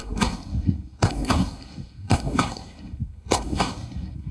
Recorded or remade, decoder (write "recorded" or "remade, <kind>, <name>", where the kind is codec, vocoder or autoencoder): remade, codec, SNAC